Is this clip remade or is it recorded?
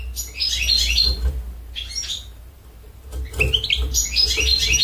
recorded